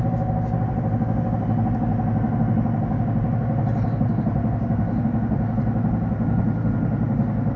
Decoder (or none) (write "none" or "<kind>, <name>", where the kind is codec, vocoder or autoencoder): none